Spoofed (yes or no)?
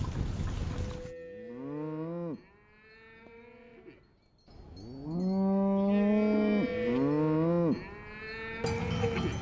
no